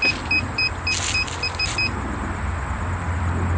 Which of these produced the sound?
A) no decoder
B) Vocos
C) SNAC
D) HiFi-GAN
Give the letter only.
A